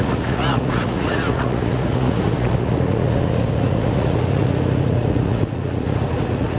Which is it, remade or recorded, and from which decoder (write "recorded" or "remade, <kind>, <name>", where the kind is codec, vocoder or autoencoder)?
remade, vocoder, Vocos